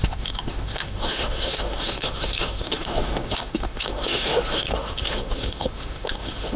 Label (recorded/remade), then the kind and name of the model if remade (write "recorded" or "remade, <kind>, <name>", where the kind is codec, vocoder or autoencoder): remade, autoencoder, DAC-VAE